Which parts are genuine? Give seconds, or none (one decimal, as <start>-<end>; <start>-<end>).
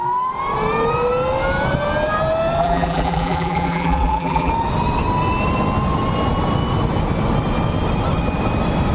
0.0-2.6; 4.5-8.9